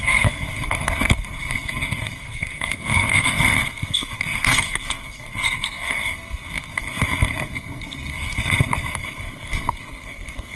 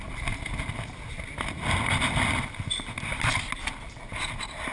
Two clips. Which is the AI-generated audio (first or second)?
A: first